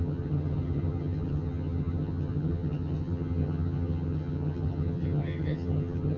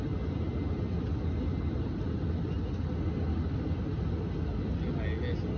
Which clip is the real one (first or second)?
second